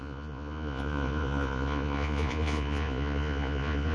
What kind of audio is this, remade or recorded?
remade